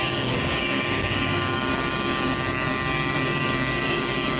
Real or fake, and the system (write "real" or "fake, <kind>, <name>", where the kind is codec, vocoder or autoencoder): fake, codec, DAC